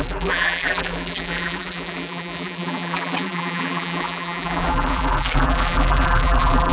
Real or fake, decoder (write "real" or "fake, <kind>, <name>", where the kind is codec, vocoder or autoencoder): fake, vocoder, BigVGAN v2